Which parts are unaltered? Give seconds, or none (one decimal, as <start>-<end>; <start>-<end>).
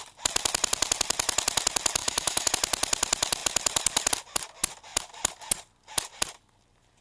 0.0-2.0; 2.5-7.0